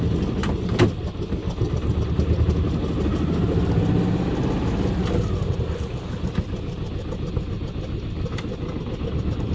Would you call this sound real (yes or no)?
yes